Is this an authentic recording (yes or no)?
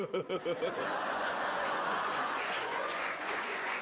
no